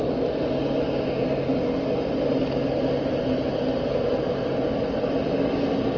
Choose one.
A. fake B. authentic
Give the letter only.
B